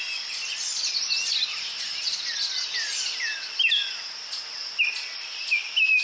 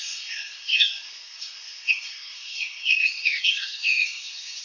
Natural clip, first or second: first